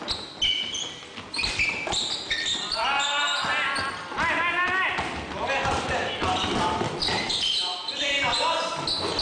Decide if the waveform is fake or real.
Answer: real